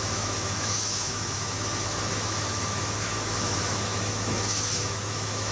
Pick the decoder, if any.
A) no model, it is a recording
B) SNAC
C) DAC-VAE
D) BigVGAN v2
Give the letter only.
C